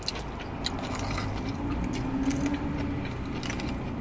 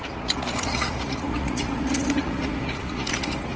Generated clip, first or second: second